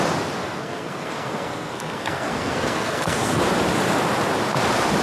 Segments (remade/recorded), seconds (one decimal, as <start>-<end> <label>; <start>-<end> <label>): 0.0-0.4 recorded; 0.4-3.4 remade; 3.4-5.0 recorded